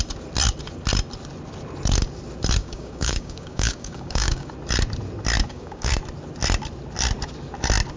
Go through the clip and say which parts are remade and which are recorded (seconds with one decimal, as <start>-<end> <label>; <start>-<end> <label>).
0.0-2.6 recorded; 2.6-4.5 remade; 4.5-5.4 recorded; 5.4-5.9 remade; 5.9-8.0 recorded